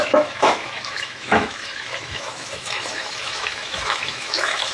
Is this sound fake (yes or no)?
yes